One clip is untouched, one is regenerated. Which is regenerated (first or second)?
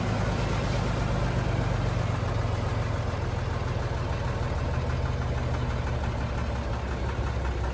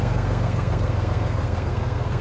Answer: second